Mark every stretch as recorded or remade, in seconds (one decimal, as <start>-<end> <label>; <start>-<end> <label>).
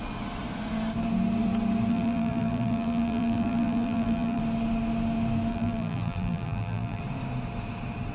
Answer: 0.0-1.9 recorded; 1.9-4.4 remade; 4.4-5.5 recorded; 5.5-7.0 remade; 7.0-8.1 recorded